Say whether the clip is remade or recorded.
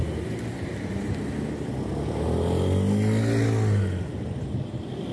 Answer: recorded